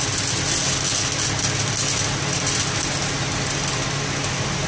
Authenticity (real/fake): real